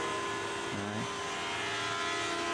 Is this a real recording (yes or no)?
yes